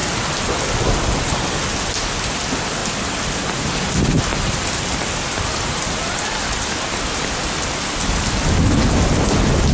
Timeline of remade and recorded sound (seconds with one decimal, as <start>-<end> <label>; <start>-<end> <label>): 0.0-1.1 remade; 1.1-2.8 recorded; 2.8-6.7 remade; 6.7-9.7 recorded